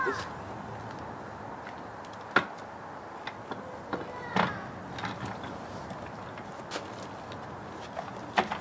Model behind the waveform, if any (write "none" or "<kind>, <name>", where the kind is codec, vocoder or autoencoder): none